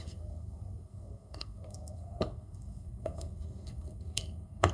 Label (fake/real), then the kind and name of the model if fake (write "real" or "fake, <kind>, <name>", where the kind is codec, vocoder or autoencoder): fake, codec, SNAC